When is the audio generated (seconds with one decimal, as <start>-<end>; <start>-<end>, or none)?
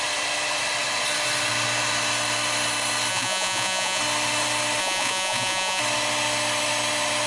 3.1-4.0; 4.8-5.8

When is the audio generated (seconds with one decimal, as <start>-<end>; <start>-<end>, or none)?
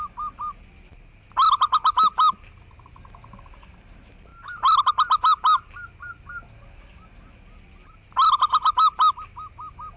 none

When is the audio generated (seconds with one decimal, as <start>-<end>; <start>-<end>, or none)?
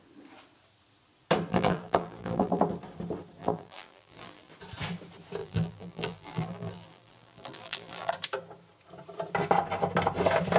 1.5-2.6; 3.4-4.5; 5.4-8.1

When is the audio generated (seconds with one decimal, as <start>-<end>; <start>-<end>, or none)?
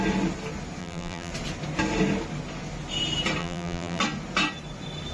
0.8-1.3; 3.4-4.0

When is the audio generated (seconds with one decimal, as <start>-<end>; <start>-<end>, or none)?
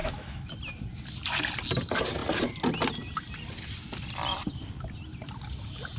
0.0-0.5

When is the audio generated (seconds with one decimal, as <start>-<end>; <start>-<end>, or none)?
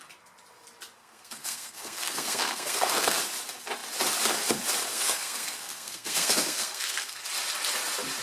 1.0-3.2; 4.9-7.2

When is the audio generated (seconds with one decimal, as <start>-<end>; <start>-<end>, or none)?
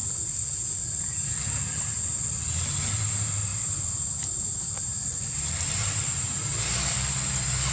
3.0-7.7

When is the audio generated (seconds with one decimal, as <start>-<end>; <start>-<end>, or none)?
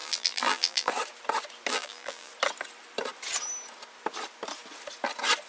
0.0-0.9; 1.7-2.3